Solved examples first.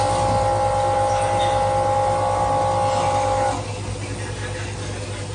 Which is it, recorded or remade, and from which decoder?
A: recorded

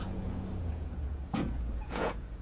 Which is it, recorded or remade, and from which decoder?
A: remade, vocoder, Vocos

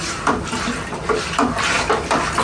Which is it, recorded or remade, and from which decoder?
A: recorded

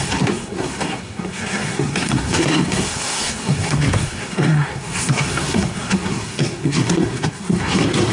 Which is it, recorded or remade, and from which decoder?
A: remade, codec, SNAC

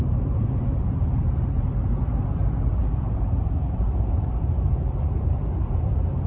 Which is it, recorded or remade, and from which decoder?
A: remade, vocoder, BigVGAN v2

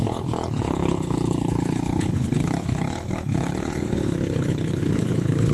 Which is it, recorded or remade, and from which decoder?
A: remade, codec, HILCodec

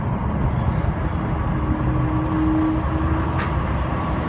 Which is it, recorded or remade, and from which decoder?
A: recorded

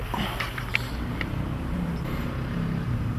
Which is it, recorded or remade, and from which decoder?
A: remade, vocoder, BigVGAN v2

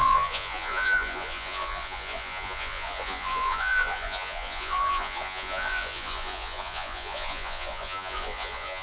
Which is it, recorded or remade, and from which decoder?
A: remade, vocoder, Vocos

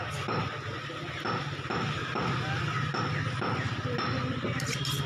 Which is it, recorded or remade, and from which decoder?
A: recorded